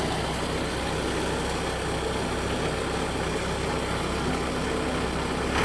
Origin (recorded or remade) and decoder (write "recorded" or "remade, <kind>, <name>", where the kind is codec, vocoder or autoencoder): recorded